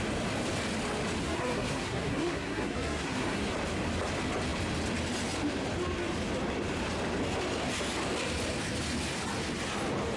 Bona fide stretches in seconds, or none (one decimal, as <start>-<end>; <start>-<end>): 0.0-1.2; 3.5-10.2